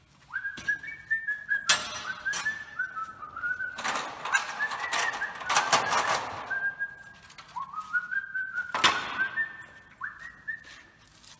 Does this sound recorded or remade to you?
recorded